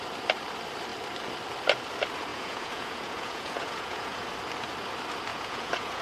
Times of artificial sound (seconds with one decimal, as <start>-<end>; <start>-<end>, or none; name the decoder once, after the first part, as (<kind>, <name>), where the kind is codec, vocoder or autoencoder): 2.3-4.3 (vocoder, Vocos); 5.3-6.0